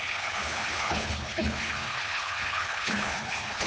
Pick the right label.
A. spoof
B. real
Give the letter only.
A